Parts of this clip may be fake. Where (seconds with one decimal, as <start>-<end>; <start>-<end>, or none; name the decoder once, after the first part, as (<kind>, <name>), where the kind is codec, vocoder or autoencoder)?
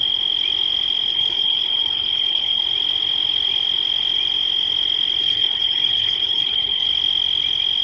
1.1-2.6 (codec, HILCodec); 5.2-6.9